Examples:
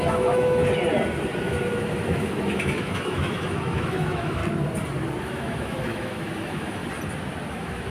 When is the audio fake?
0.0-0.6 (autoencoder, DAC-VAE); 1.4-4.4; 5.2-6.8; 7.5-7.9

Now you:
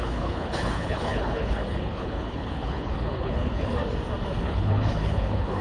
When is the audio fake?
0.0-3.8 (codec, HILCodec); 4.4-5.6

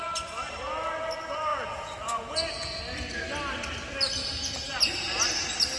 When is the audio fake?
1.5-2.8 (vocoder, Vocos); 4.2-4.8

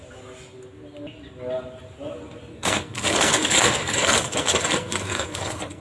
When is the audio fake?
2.5-5.8 (codec, SNAC)

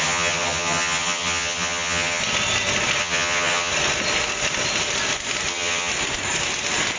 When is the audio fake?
0.0-2.2 (vocoder, HiFi-GAN); 3.0-3.7; 5.5-5.9

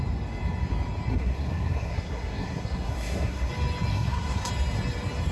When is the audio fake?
1.1-3.5 (codec, SNAC); 3.9-4.5